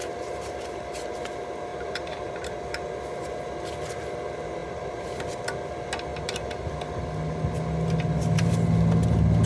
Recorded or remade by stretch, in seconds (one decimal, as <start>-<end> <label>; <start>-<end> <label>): 0.0-1.0 remade; 1.0-1.7 recorded; 1.7-2.3 remade; 2.3-4.6 recorded; 4.6-5.3 remade; 5.3-6.1 recorded; 6.1-6.7 remade; 6.7-9.5 recorded